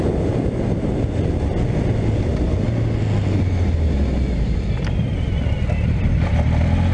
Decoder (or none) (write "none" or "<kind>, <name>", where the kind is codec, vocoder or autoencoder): none